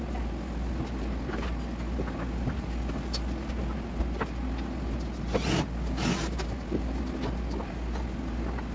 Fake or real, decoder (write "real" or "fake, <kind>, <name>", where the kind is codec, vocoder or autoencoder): real